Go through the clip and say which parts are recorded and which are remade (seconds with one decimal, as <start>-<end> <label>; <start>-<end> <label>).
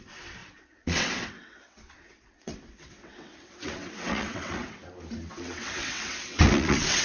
0.0-4.8 remade; 4.8-5.3 recorded; 5.3-7.0 remade